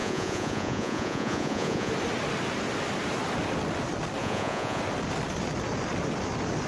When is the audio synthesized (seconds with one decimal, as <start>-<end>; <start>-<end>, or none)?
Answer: 0.0-1.9; 4.2-4.8

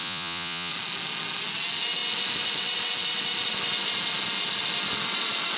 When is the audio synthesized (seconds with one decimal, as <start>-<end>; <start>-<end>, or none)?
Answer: 0.0-0.7

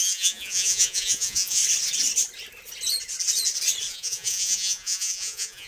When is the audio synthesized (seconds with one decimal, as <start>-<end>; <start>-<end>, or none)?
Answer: 0.0-1.6; 3.9-5.7

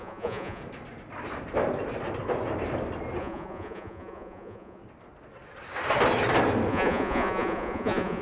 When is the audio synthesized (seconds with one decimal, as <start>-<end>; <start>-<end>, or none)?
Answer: 0.0-0.6; 3.2-4.8; 6.7-8.2

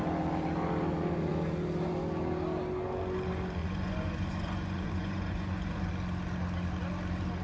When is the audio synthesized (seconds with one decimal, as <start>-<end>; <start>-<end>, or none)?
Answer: 3.6-5.9

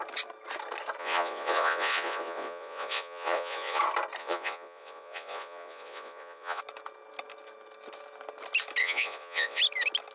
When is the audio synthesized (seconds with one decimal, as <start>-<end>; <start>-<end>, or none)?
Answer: 1.0-3.8; 4.2-6.6; 8.8-9.6

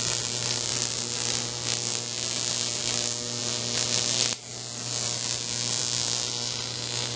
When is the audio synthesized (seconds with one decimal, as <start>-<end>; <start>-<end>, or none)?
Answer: none